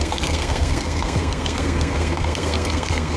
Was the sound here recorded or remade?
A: remade